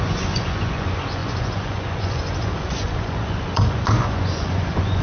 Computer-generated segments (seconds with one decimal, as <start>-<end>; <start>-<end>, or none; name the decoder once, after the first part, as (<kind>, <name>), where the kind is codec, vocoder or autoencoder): 0.0-5.0 (vocoder, Vocos)